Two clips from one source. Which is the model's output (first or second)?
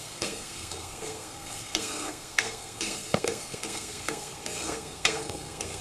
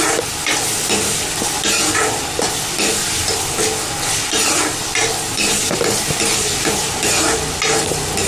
first